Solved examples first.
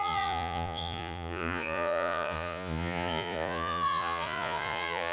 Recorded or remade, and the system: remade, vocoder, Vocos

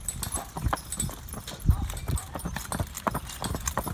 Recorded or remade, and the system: recorded